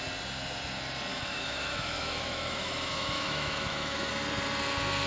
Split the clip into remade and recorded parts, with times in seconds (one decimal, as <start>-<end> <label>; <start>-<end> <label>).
0.0-1.1 recorded; 1.1-4.1 remade; 4.1-5.1 recorded